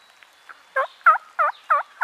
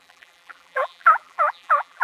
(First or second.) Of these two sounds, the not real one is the second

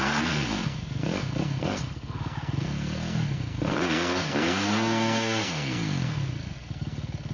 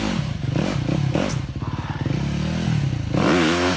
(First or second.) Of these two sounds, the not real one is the first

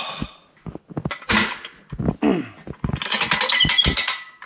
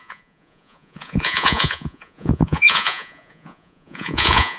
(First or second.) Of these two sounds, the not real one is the second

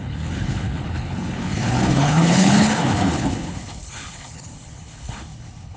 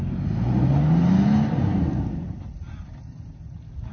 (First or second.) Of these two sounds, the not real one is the first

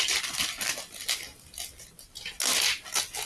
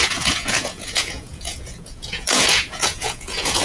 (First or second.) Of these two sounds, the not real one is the second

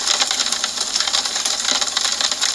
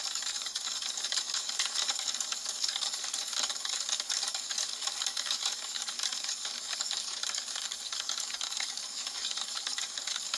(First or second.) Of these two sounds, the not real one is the second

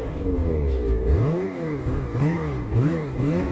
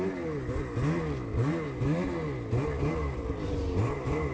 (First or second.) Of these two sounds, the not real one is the first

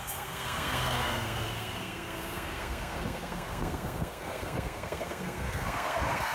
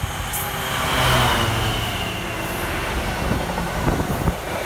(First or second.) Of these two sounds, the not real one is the first